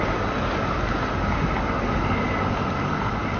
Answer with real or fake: real